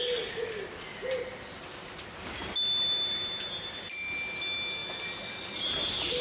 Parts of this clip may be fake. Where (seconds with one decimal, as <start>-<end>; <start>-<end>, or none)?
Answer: none